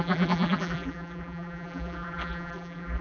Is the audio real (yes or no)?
no